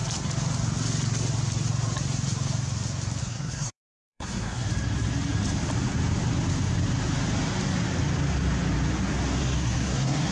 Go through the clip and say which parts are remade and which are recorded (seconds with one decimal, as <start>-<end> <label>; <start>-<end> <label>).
0.0-3.2 recorded; 3.2-4.7 remade; 4.7-9.4 recorded; 9.4-10.3 remade